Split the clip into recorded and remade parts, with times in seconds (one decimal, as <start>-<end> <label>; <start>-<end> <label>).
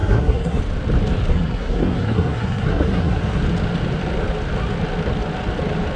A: 0.0-0.6 remade; 0.6-1.3 recorded; 1.3-3.4 remade; 3.4-6.0 recorded